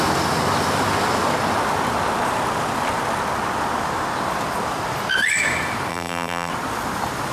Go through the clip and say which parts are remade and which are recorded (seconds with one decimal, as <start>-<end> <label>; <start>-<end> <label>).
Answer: 0.0-5.9 recorded; 5.9-6.5 remade; 6.5-7.3 recorded